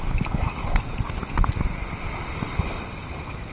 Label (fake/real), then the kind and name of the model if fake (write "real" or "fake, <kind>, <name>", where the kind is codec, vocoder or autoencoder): real